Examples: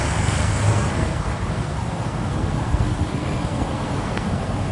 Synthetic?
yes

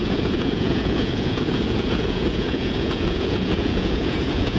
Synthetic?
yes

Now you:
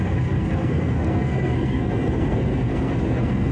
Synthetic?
yes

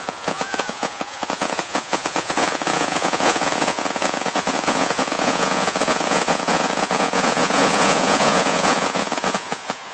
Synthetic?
yes